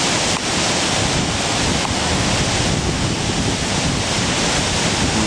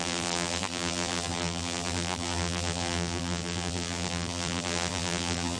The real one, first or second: first